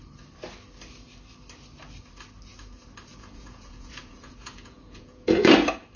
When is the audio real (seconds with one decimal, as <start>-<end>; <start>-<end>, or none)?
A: 0.0-3.1; 5.5-6.0